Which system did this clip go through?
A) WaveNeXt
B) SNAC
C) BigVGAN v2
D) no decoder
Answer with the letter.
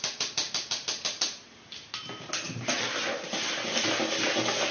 D